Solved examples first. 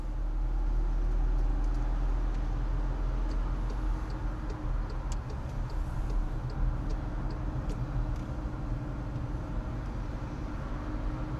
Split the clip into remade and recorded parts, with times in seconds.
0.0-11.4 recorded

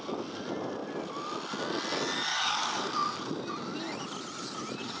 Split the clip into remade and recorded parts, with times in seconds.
0.0-2.3 recorded; 2.3-2.9 remade; 2.9-5.0 recorded

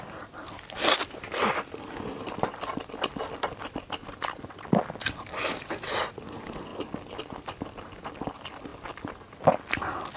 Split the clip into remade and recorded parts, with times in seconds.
0.0-10.2 recorded

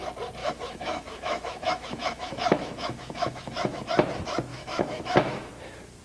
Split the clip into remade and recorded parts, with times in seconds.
0.0-0.4 recorded; 0.4-3.8 remade; 3.8-4.5 recorded; 4.5-5.5 remade; 5.5-6.0 recorded

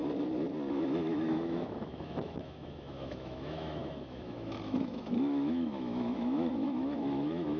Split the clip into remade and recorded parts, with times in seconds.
0.0-0.7 recorded; 0.7-7.6 remade